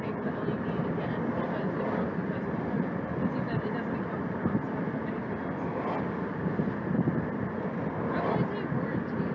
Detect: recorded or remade recorded